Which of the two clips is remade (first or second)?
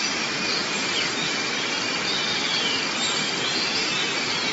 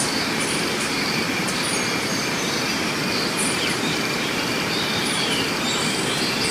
second